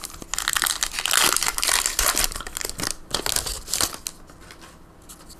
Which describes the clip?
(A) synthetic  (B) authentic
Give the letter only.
B